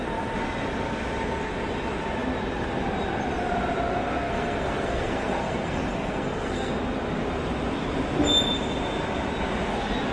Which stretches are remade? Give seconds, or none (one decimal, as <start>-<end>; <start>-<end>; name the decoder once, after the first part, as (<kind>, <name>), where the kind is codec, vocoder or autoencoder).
3.9-6.7 (codec, SNAC)